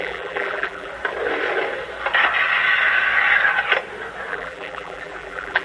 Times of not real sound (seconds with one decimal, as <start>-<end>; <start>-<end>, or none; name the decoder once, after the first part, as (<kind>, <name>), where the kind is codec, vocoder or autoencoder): 0.0-0.9 (vocoder, BigVGAN v2); 4.3-5.6